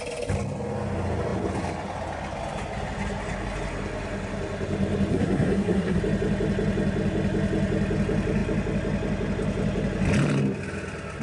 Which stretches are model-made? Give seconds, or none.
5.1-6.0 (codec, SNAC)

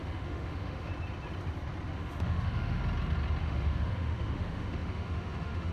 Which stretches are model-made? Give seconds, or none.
0.0-0.9 (autoencoder, DAC-VAE); 1.9-2.8; 3.4-5.7

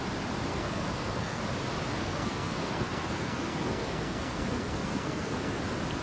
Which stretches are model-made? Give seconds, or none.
0.5-1.4 (codec, SNAC); 2.0-5.6

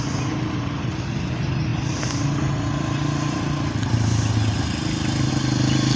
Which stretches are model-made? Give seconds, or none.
none

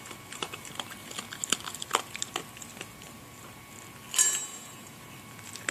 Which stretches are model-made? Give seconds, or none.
4.5-5.0 (vocoder, Vocos)